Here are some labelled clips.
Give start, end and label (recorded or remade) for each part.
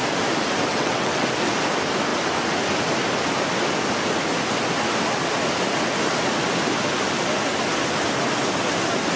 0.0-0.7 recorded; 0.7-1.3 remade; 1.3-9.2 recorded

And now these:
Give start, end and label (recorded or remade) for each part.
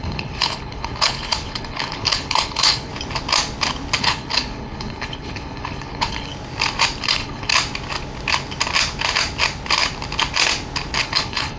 0.0-2.9 remade; 2.9-4.0 recorded; 4.0-6.3 remade; 6.3-7.0 recorded; 7.0-7.5 remade; 7.5-11.0 recorded; 11.0-11.6 remade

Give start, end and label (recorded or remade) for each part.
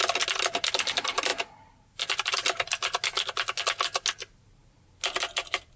0.0-5.8 recorded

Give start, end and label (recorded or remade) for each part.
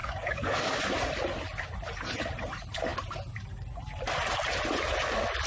0.0-0.8 remade; 0.8-5.5 recorded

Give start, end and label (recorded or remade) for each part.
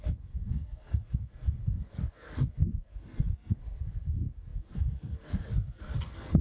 0.0-6.4 remade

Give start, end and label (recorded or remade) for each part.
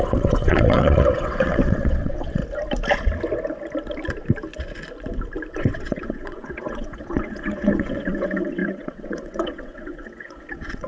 0.0-2.4 remade; 2.4-5.5 recorded; 5.5-10.9 remade